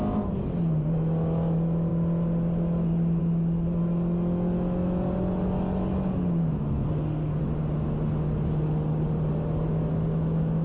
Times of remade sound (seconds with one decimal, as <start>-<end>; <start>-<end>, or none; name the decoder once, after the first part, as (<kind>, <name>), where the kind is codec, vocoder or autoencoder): 6.4-7.4 (codec, SNAC)